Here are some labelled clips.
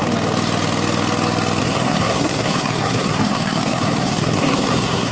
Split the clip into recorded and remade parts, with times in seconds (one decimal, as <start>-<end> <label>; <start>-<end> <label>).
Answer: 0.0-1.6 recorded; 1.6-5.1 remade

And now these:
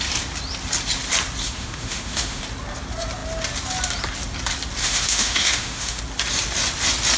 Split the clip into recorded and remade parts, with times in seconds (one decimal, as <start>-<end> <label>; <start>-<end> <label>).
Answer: 0.0-1.4 recorded; 1.4-2.4 remade; 2.4-4.8 recorded; 4.8-6.0 remade; 6.0-7.2 recorded

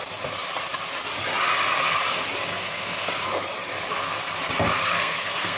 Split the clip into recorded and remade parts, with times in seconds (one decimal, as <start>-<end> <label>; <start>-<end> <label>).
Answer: 0.0-2.5 recorded; 2.5-3.1 remade; 3.1-4.8 recorded; 4.8-5.6 remade

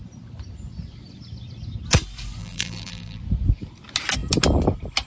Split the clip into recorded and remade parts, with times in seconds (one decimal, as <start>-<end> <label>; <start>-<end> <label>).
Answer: 0.0-2.4 recorded; 2.4-3.2 remade; 3.2-5.1 recorded

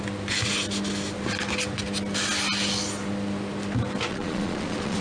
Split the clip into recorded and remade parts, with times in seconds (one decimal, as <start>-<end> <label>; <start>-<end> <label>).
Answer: 0.0-4.1 recorded; 4.1-5.0 remade

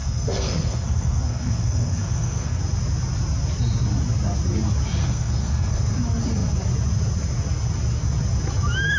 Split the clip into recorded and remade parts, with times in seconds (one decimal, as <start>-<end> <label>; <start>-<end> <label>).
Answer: 0.0-2.6 remade; 2.6-5.0 recorded; 5.0-5.8 remade; 5.8-9.0 recorded